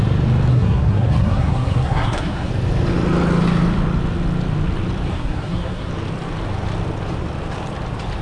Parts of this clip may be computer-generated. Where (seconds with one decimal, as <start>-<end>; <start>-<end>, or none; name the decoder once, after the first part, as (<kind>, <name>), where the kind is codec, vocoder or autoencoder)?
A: 0.5-2.5 (codec, SNAC); 5.1-5.9